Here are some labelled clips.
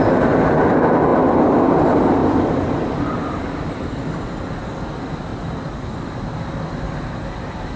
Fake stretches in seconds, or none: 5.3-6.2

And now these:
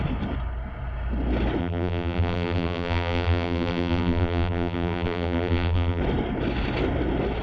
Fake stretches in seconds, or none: 1.6-6.0

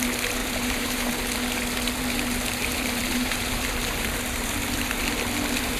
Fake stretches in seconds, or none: 0.4-1.1; 2.6-4.1

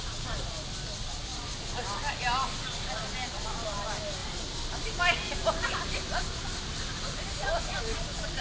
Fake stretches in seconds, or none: none

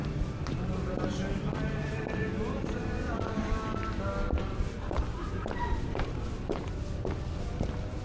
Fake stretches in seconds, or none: 0.0-3.8; 4.4-8.0

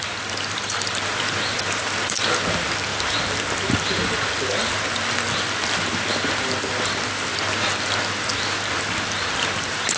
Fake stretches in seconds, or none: 0.0-7.3; 9.3-10.0

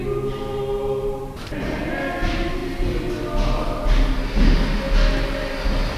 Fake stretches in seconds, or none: none